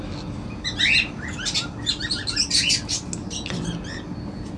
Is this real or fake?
real